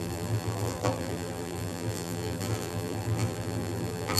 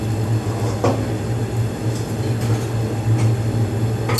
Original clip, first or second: second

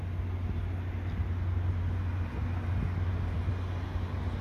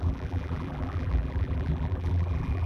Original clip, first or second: first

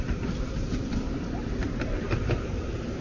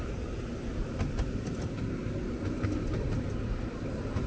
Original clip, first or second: second